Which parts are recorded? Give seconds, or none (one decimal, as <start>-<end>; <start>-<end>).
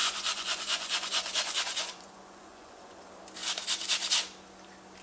3.0-5.0